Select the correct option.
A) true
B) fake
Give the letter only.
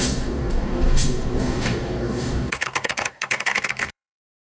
B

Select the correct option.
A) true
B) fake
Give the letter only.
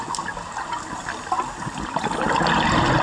A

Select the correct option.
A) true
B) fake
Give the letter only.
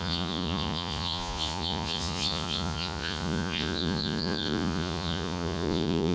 B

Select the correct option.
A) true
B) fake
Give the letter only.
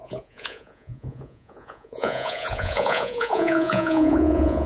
B